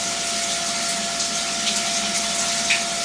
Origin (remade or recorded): recorded